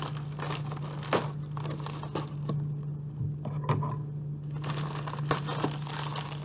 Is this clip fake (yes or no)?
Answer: no